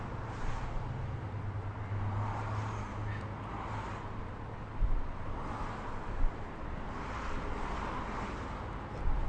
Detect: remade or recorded recorded